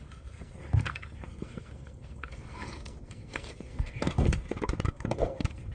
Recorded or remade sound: remade